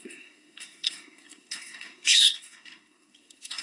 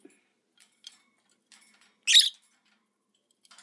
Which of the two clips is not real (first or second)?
first